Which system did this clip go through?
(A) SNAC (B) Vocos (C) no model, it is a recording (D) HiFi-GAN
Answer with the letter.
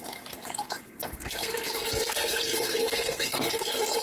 A